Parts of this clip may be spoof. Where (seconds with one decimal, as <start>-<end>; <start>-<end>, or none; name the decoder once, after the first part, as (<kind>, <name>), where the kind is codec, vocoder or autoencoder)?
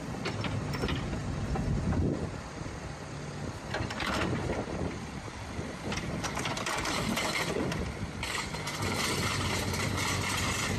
0.0-10.8 (vocoder, BigVGAN v2)